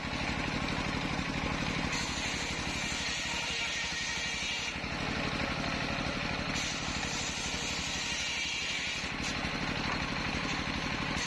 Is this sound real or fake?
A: real